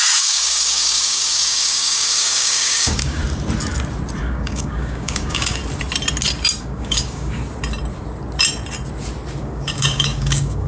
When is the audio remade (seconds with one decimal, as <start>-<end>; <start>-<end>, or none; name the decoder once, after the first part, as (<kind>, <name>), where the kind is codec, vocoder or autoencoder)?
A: 0.0-3.2 (codec, DAC); 4.2-5.6; 6.6-7.4; 9.4-10.7